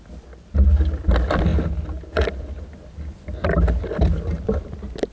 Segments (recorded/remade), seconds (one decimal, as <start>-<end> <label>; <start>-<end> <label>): 0.0-1.5 remade; 1.5-2.3 recorded; 2.3-5.1 remade